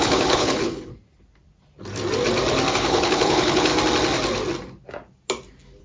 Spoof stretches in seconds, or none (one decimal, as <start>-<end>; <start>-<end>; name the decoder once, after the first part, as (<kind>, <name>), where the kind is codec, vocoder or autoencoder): 0.0-0.9 (codec, HILCodec); 2.7-3.7